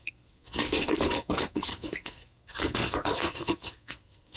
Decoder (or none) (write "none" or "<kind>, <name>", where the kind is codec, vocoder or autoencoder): codec, SNAC